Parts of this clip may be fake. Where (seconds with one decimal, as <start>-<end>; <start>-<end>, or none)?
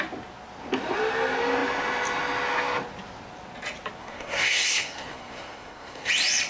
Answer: 4.0-6.1